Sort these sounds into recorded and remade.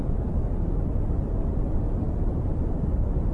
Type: remade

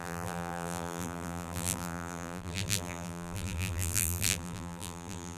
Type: remade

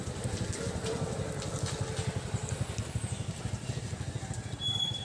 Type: recorded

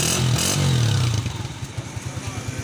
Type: recorded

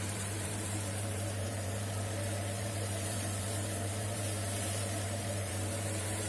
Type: remade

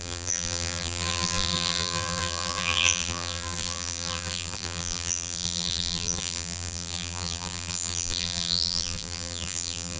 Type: remade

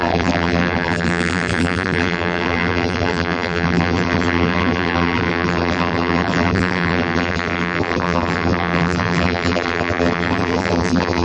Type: remade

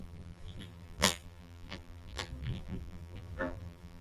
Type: remade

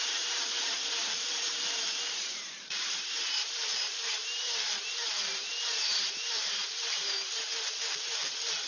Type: remade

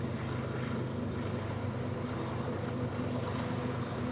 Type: recorded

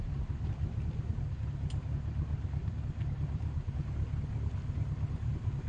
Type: recorded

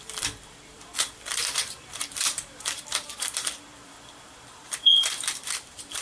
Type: remade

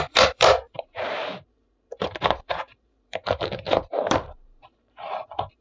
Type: remade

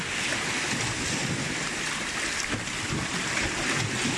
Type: recorded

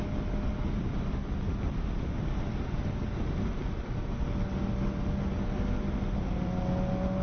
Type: recorded